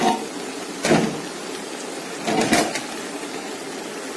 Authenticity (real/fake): real